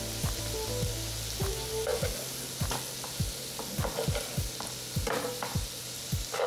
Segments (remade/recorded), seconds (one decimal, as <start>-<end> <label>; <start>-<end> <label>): 0.0-6.5 recorded